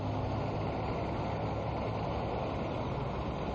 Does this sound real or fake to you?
real